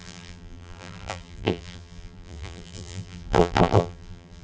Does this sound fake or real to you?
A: fake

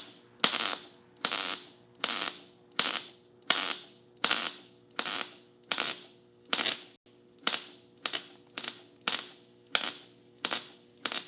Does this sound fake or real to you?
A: real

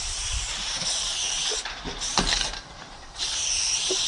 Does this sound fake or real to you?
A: fake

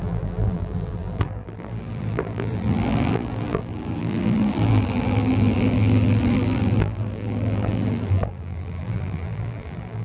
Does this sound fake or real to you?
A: fake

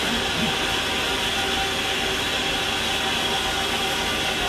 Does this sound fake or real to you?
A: real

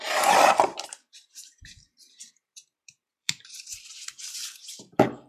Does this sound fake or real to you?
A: fake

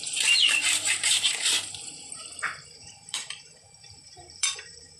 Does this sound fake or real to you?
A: fake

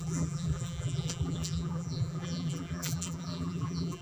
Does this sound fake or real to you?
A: fake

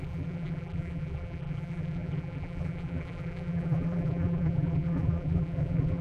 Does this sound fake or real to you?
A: fake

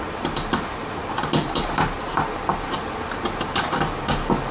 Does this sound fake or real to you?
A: real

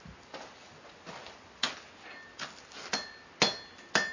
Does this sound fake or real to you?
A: real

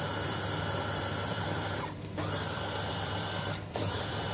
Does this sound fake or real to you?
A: fake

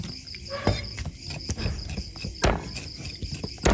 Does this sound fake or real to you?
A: real